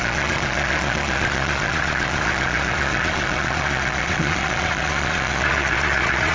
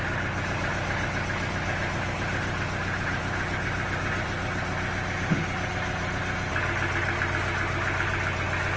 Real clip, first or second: second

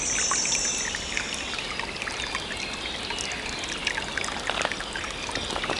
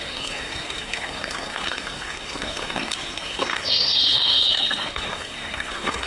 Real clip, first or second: first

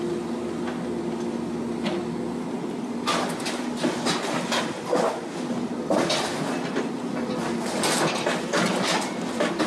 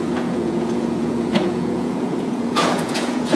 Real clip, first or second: first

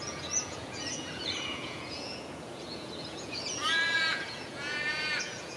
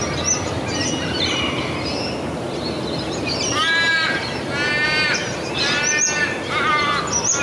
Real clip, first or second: second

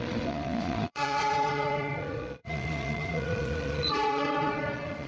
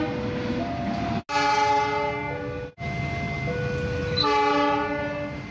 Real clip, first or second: second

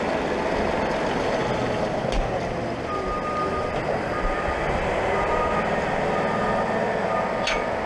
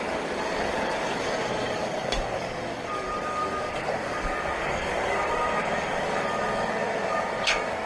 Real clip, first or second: first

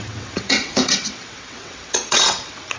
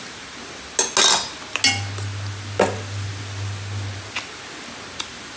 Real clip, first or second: second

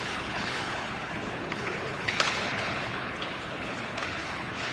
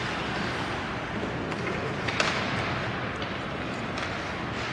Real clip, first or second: second